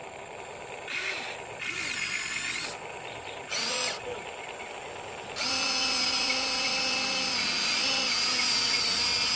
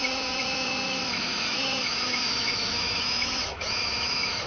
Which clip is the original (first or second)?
first